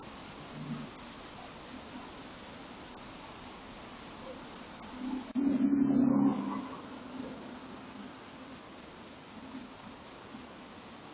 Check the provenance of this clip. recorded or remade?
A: recorded